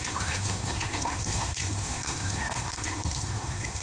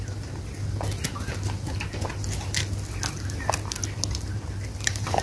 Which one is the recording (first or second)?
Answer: second